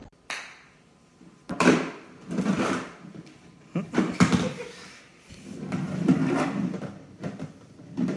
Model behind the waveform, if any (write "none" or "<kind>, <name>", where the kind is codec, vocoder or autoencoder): vocoder, BigVGAN v2